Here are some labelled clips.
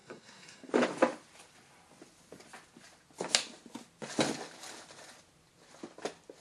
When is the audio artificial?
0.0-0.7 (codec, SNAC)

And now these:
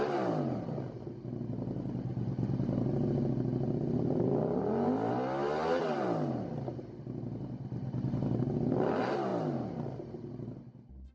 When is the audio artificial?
none

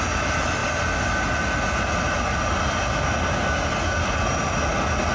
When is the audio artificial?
none

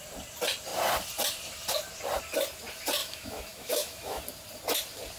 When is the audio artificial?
3.0-4.2 (autoencoder, DAC-VAE)

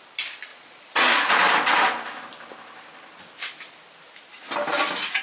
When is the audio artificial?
0.5-1.3 (vocoder, Vocos)

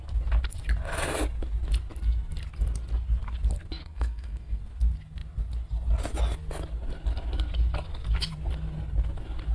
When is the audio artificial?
3.8-4.6 (codec, SNAC)

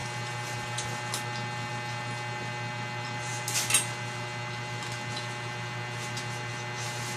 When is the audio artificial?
none